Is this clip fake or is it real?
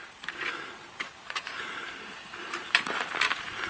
fake